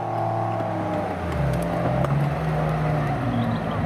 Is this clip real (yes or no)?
yes